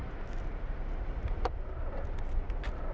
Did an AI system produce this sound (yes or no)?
no